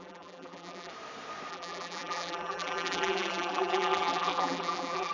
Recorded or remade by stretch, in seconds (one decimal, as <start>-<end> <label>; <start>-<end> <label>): 0.0-0.9 remade; 0.9-1.5 recorded; 1.5-5.1 remade